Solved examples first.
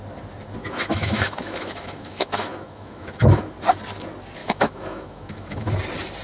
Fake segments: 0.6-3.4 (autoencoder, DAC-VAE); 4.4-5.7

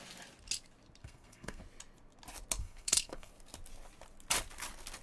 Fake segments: 1.0-1.6 (codec, SNAC); 2.6-3.3

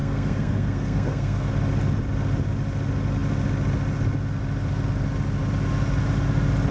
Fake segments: 0.0-1.5 (codec, SNAC)

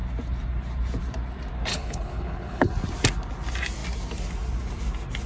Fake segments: 1.7-2.7 (codec, HILCodec)

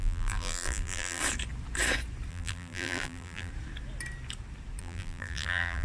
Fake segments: 0.0-1.2 (vocoder, BigVGAN v2); 2.3-3.5; 4.8-5.8